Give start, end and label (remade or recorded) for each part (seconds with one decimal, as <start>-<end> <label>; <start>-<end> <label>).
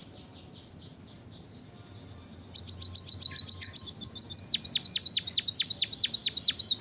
0.0-6.8 recorded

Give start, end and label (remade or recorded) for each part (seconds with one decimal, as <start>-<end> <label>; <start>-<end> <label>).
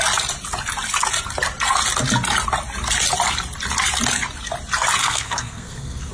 0.0-5.0 recorded; 5.0-6.1 remade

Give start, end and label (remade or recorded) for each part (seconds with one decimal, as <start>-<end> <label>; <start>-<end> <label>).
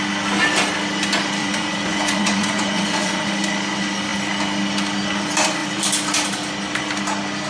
0.0-1.4 recorded; 1.4-3.3 remade; 3.3-7.5 recorded